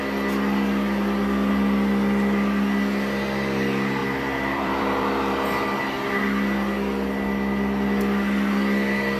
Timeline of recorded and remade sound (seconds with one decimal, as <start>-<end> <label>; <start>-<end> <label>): 0.0-4.0 recorded; 4.0-5.8 remade; 5.8-9.2 recorded